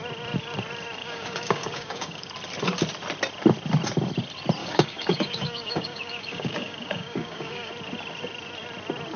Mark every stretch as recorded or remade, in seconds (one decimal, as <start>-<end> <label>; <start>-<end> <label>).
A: 0.0-1.0 recorded; 1.0-2.3 remade; 2.3-4.6 recorded; 4.6-7.7 remade; 7.7-9.2 recorded